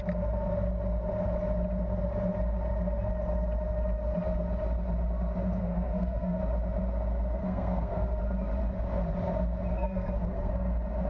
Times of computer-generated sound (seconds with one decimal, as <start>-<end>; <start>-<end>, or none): 5.6-6.4; 7.4-8.2; 9.7-10.5